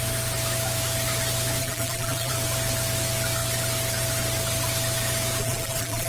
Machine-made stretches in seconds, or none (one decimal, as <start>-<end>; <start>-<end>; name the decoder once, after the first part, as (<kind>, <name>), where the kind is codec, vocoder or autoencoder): 1.6-2.3 (vocoder, BigVGAN v2); 5.4-6.1